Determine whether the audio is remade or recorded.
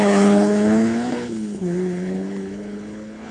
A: remade